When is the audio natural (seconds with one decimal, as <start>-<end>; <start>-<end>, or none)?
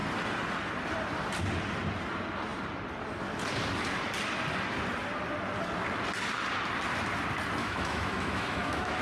0.0-7.6